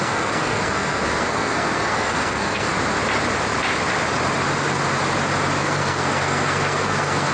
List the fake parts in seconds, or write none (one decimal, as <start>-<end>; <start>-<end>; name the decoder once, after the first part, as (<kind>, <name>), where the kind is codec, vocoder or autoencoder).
0.0-2.7 (codec, SNAC); 5.6-7.3